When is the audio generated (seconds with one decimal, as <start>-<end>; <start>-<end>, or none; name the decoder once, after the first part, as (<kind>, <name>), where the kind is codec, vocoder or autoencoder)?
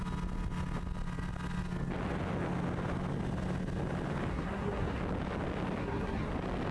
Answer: 4.3-5.0 (codec, SNAC); 5.8-6.3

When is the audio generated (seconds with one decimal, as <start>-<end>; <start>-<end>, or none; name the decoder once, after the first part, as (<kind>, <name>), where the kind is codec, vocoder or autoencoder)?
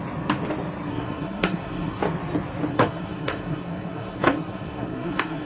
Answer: 0.9-2.0 (codec, SNAC); 2.7-5.5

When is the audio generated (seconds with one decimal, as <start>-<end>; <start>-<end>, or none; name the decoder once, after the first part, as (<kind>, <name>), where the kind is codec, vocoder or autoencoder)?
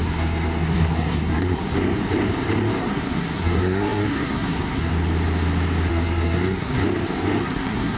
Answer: 0.0-1.7 (codec, SNAC); 2.8-4.9; 5.9-6.8; 7.4-8.0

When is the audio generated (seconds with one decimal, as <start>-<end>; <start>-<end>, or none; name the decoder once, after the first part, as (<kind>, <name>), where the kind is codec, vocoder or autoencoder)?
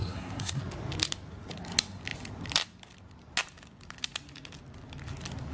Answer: 0.0-0.6 (codec, SNAC)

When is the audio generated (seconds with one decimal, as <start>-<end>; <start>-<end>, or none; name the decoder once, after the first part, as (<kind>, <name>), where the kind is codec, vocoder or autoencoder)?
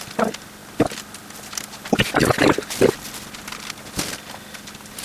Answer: none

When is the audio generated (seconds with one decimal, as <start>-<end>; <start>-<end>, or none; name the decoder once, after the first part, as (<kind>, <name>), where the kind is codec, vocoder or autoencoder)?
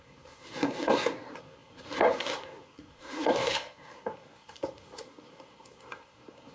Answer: 0.0-6.5 (codec, SNAC)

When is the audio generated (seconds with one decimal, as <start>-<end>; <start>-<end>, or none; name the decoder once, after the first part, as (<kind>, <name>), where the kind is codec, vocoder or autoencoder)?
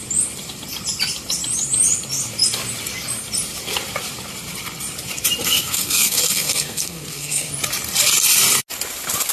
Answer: 5.4-7.5 (codec, SNAC)